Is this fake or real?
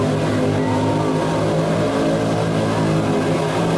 real